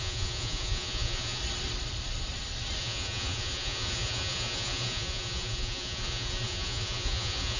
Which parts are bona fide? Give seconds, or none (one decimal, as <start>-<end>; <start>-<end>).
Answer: 1.4-2.8